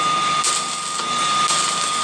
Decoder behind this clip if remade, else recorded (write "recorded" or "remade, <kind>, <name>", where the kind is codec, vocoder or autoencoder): recorded